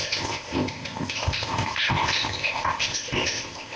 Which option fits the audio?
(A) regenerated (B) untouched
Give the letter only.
A